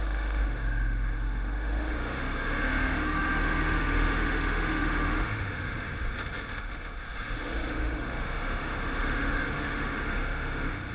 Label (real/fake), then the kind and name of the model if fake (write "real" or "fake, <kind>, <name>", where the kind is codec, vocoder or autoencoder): fake, autoencoder, DAC-VAE